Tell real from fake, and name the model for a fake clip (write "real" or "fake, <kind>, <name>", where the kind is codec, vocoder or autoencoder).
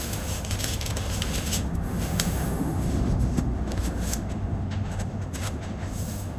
fake, autoencoder, DAC-VAE